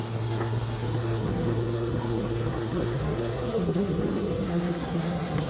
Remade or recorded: remade